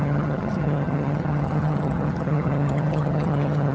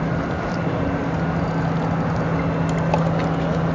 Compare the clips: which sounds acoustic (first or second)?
second